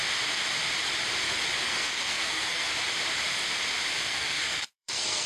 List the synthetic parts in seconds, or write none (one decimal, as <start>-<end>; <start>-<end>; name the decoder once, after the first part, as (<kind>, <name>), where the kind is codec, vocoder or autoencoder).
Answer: 1.6-2.7 (codec, SNAC); 4.0-5.3